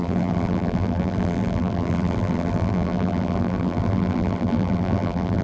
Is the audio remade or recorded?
remade